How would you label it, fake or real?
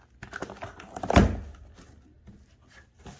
real